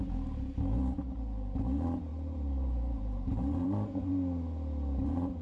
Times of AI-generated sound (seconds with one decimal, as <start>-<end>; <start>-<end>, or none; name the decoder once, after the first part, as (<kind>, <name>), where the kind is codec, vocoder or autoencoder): 2.1-4.1 (vocoder, BigVGAN v2)